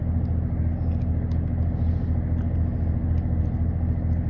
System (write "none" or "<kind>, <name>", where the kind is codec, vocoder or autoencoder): none